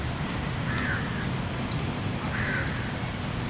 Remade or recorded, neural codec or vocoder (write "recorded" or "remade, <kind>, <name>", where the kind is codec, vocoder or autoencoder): recorded